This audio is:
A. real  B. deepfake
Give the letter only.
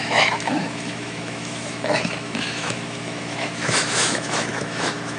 B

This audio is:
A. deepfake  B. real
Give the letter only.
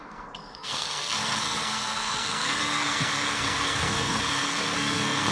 A